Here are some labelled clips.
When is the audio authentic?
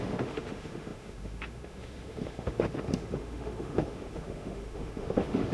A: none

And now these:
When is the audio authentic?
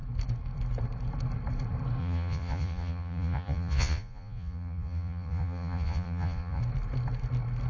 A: 0.0-2.0; 6.6-7.7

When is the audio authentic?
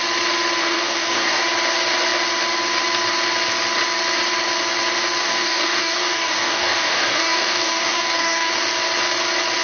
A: 0.0-0.6; 1.4-5.2; 8.5-9.6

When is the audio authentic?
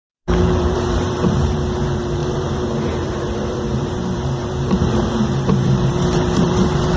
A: none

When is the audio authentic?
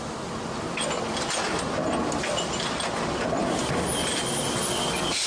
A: 0.0-5.3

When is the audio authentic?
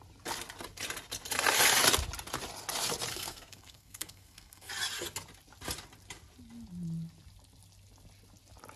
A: 0.0-3.1; 4.7-8.8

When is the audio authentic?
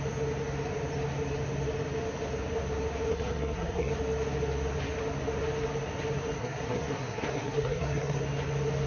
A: 0.0-3.1; 3.9-6.4; 8.2-8.9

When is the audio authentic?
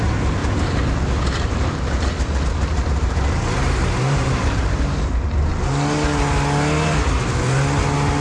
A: 0.0-0.4; 1.9-2.7; 5.5-8.2